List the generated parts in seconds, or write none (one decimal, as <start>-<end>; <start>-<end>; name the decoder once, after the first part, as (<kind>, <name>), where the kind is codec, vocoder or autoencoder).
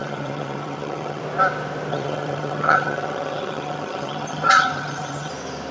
0.0-1.2 (vocoder, HiFi-GAN); 1.9-5.3